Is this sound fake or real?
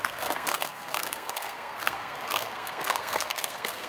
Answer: fake